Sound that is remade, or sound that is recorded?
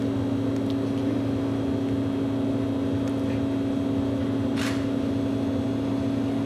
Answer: recorded